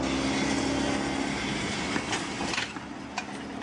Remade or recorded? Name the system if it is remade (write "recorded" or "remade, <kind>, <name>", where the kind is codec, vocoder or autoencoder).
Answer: recorded